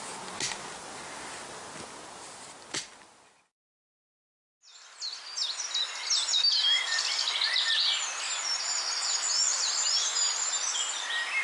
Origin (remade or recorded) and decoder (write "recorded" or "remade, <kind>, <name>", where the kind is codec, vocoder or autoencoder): recorded